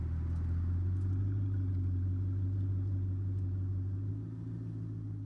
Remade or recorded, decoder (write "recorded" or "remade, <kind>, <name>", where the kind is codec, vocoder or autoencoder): recorded